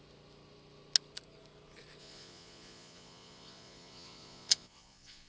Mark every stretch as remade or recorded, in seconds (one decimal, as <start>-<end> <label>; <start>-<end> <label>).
0.0-2.0 recorded; 2.0-5.3 remade